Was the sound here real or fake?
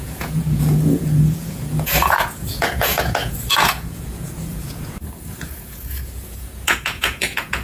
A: fake